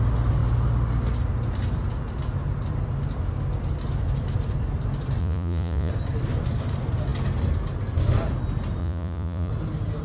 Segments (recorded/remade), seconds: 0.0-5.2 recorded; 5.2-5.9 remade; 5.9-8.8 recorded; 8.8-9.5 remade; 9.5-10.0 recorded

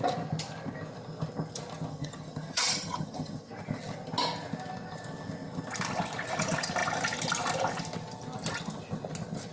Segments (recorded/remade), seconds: 0.0-1.9 recorded; 1.9-3.5 remade; 3.5-9.5 recorded

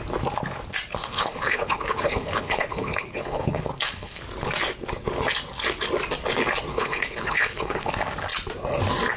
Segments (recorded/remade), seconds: 0.0-1.0 recorded; 1.0-4.2 remade; 4.2-6.7 recorded; 6.7-7.9 remade; 7.9-9.2 recorded

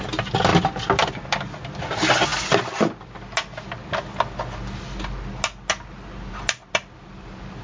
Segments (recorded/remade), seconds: 0.0-7.6 recorded

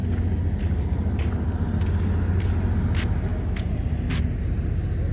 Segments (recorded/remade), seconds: 0.0-5.1 recorded

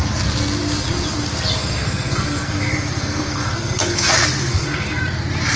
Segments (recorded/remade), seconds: 0.0-1.6 recorded; 1.6-4.1 remade; 4.1-4.5 recorded; 4.5-5.0 remade; 5.0-5.6 recorded

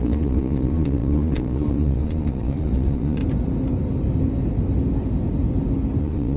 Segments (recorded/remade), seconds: 0.0-3.2 remade; 3.2-6.0 recorded; 6.0-6.4 remade